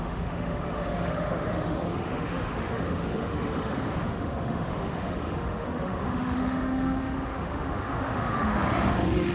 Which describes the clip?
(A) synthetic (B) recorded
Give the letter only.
A